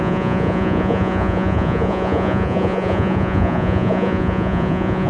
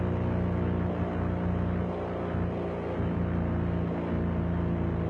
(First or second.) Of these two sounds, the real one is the second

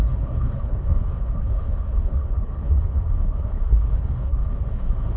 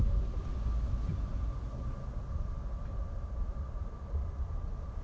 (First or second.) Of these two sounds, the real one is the second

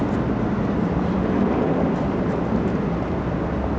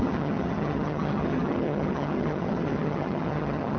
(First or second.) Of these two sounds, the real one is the first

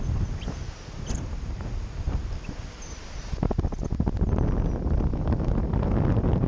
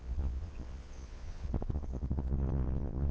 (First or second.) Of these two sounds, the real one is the first